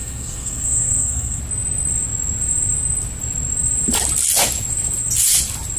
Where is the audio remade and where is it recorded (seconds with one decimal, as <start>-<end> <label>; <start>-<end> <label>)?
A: 0.0-1.4 remade; 1.4-5.8 recorded